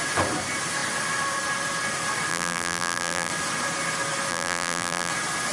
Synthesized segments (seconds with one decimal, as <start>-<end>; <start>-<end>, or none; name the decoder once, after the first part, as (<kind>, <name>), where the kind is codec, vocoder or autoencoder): 2.3-3.3 (vocoder, BigVGAN v2); 4.3-5.1